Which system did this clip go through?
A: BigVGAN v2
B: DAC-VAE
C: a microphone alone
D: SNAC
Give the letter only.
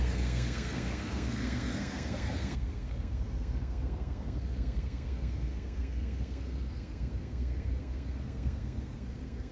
D